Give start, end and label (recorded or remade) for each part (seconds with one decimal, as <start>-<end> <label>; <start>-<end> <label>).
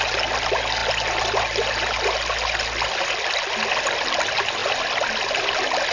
0.0-5.9 recorded